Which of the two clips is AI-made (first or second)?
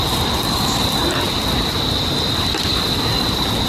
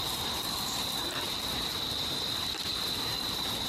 second